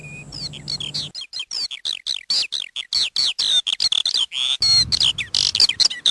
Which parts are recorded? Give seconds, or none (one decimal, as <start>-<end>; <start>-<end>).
0.0-6.1